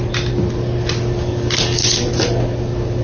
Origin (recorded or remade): recorded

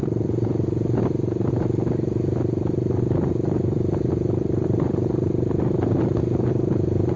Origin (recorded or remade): recorded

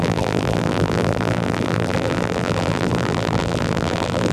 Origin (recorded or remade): remade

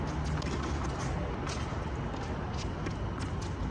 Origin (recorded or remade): recorded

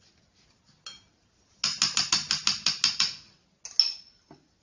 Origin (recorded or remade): recorded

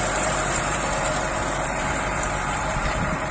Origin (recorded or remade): remade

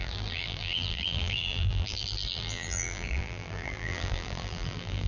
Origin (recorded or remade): remade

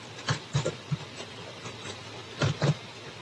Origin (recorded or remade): recorded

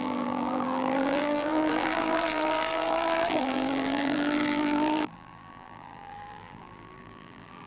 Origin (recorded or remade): remade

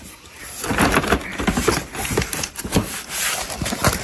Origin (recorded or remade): recorded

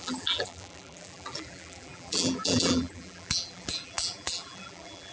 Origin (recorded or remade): remade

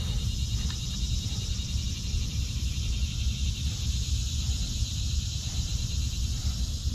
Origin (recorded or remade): remade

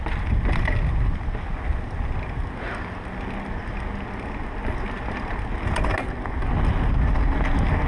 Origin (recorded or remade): recorded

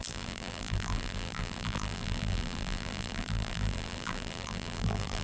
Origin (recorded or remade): remade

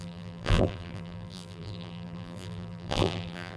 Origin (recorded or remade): remade